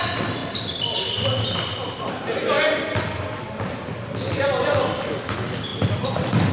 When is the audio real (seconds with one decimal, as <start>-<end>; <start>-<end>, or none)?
0.0-6.5